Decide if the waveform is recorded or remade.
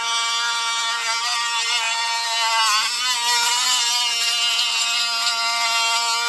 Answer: recorded